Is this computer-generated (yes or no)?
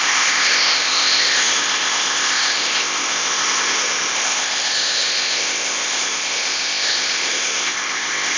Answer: yes